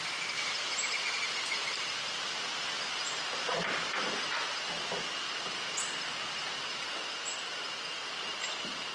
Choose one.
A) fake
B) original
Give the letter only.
B